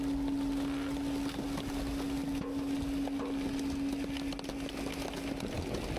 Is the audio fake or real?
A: real